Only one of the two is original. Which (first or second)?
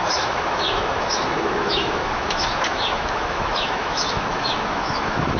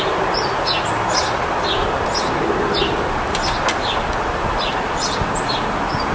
second